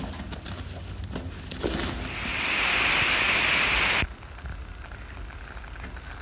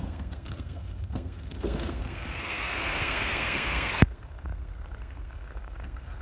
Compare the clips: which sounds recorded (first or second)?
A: first